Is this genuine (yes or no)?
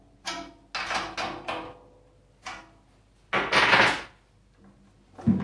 yes